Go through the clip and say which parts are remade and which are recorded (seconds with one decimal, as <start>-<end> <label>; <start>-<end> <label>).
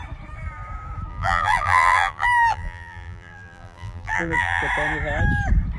0.0-1.1 recorded; 1.1-4.6 remade; 4.6-5.8 recorded